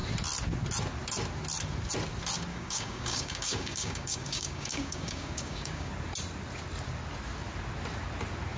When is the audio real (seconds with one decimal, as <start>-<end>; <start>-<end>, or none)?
0.0-2.5; 5.9-8.6